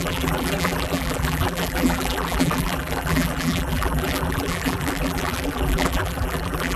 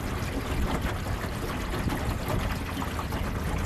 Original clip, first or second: second